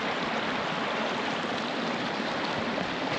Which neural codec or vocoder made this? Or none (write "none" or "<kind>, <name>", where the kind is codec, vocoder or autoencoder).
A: none